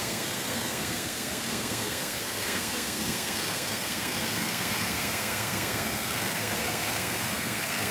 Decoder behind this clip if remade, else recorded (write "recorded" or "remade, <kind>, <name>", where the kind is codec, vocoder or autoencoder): remade, codec, SNAC